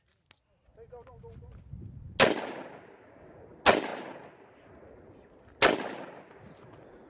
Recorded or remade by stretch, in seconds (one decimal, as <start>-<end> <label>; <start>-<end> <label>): 0.0-7.1 recorded